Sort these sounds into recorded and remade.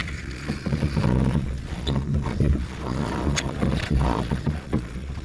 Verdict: remade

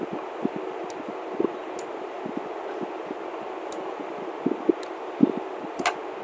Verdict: recorded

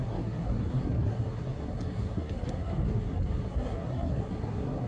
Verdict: remade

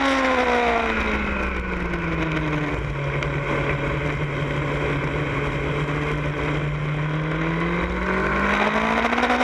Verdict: recorded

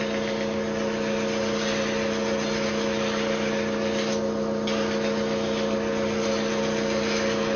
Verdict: recorded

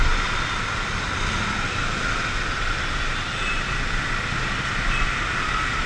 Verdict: recorded